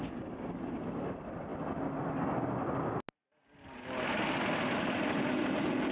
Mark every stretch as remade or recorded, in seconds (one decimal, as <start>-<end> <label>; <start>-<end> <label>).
0.0-5.9 recorded